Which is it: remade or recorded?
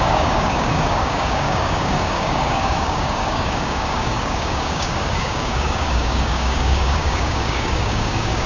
remade